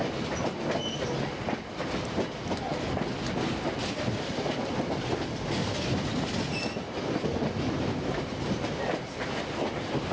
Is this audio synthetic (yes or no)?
no